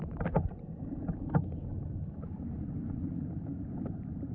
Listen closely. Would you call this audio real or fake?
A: fake